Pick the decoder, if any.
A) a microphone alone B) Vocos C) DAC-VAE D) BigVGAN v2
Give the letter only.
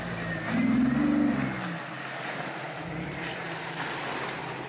A